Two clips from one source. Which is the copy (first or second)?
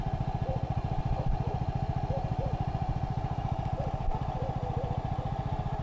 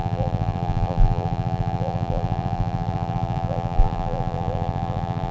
second